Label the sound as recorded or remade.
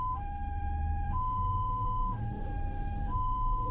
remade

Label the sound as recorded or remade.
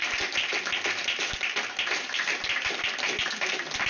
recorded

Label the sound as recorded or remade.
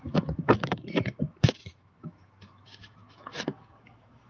remade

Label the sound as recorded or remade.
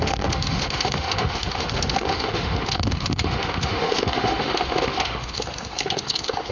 remade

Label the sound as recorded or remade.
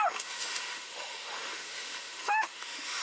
remade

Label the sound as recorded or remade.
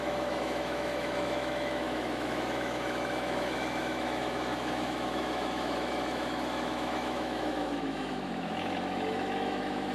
remade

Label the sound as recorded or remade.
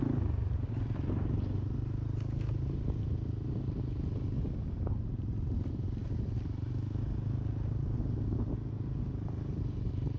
recorded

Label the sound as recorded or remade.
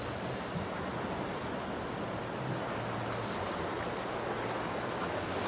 recorded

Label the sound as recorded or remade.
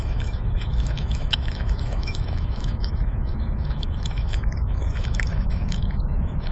remade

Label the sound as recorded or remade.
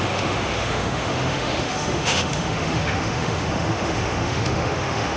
remade